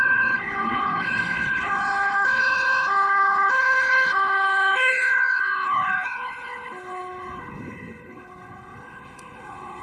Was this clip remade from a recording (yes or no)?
yes